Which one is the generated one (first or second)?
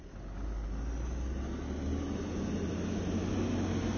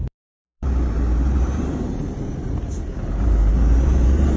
second